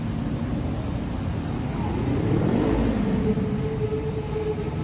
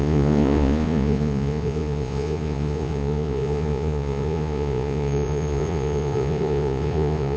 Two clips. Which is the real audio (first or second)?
first